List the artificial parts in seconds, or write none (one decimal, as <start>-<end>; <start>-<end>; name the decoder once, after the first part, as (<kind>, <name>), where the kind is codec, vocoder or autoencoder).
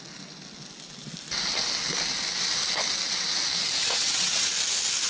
3.8-4.5 (vocoder, WaveNeXt)